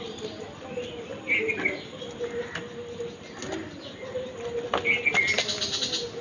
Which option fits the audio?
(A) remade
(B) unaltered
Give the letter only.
B